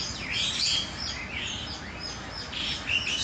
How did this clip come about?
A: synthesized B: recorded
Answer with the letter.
B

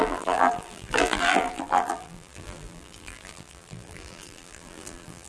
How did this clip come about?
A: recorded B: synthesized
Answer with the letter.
B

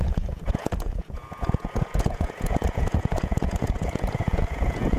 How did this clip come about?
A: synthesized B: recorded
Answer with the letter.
A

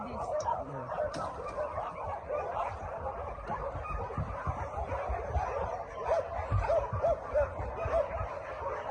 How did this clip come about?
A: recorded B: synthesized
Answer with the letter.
A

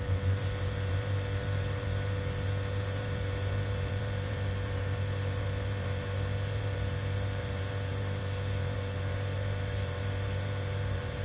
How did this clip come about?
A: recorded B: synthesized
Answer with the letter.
B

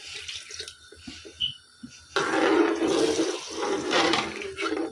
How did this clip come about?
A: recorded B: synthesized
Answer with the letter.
A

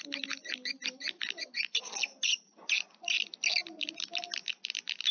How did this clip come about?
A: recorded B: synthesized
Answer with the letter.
A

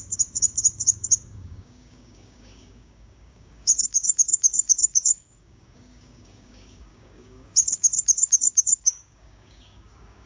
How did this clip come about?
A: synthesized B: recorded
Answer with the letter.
A